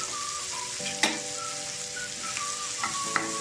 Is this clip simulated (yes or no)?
no